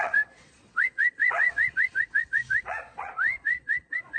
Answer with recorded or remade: remade